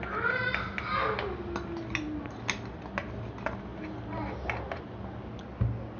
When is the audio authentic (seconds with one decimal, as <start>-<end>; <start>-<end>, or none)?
0.0-6.0